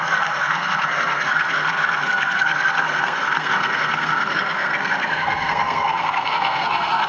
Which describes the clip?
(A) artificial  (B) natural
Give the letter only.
A